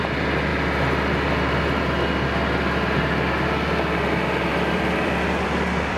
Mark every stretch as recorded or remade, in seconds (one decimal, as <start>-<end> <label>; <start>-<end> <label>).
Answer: 0.0-4.5 recorded; 4.5-6.0 remade